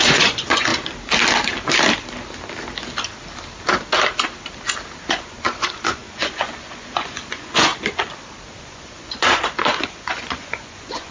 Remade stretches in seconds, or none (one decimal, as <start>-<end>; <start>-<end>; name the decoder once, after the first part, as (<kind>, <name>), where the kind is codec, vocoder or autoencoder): 0.0-0.7 (vocoder, Vocos); 5.0-7.7; 8.6-11.1